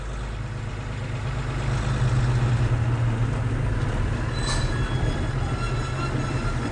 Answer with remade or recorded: recorded